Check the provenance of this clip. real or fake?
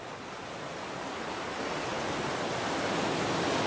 real